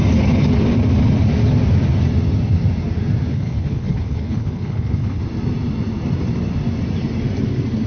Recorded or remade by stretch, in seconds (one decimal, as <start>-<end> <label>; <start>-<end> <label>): 0.0-3.3 recorded; 3.3-5.2 remade; 5.2-7.9 recorded